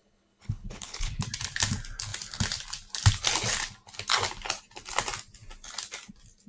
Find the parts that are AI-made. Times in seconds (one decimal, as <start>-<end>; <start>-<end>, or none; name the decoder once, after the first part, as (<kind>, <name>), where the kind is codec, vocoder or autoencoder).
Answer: 0.0-1.2 (codec, HILCodec)